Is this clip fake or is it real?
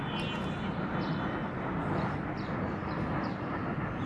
real